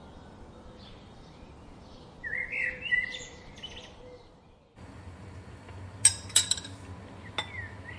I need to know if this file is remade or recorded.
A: recorded